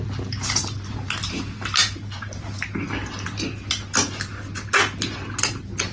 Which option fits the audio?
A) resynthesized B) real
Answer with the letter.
B